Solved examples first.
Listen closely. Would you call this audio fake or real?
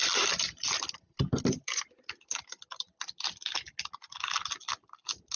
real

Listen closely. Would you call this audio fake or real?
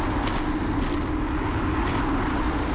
real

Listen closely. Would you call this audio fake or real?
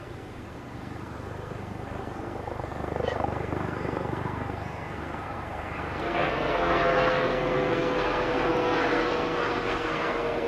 fake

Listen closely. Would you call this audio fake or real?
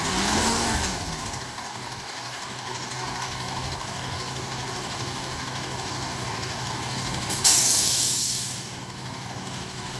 fake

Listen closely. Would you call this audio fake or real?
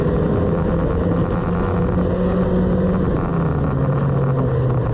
real